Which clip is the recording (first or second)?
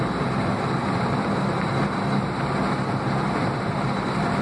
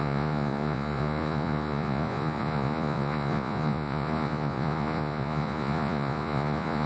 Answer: first